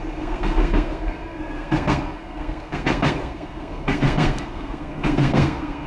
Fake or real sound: fake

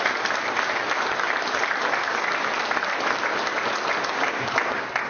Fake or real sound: real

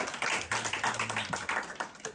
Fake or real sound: real